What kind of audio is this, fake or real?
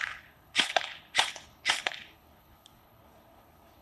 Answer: fake